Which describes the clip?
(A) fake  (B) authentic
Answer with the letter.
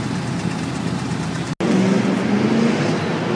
B